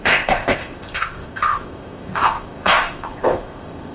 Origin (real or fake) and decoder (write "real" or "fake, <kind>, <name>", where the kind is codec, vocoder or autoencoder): fake, codec, ZipCodec